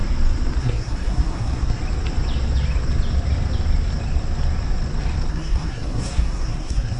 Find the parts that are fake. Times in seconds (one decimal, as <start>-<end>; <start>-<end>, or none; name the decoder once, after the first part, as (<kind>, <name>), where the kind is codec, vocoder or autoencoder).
0.6-1.8 (codec, SNAC); 5.3-7.0